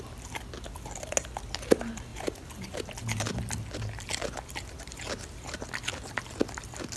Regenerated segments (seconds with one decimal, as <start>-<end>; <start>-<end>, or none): 2.1-2.8